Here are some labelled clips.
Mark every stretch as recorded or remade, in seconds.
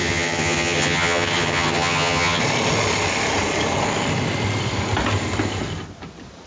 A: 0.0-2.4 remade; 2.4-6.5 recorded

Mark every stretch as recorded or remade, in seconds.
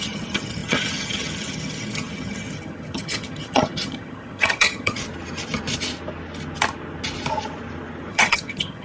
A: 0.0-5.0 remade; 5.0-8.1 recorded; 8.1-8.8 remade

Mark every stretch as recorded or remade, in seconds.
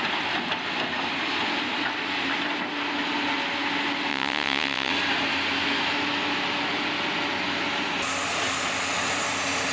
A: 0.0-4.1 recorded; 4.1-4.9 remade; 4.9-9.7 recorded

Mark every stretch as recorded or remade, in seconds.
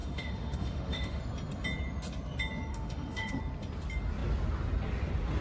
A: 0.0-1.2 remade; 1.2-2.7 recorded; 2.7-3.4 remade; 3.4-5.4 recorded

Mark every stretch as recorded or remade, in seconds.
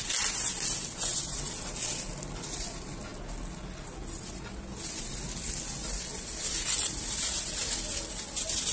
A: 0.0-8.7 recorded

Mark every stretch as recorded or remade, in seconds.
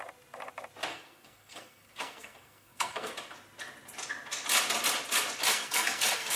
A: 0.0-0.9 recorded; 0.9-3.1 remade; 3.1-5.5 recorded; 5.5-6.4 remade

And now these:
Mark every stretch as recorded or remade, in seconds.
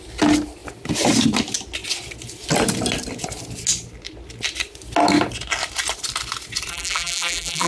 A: 0.0-6.7 recorded; 6.7-7.7 remade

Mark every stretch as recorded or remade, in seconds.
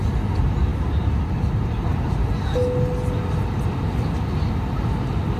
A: 0.0-5.4 recorded